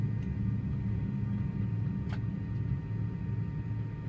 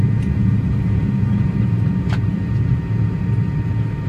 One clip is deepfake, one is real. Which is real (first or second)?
first